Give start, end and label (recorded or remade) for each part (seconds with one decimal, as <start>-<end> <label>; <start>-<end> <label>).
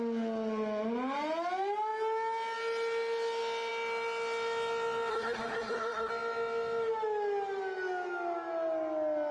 0.0-5.1 recorded; 5.1-6.1 remade; 6.1-9.3 recorded